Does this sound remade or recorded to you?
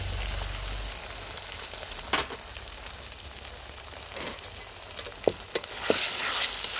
recorded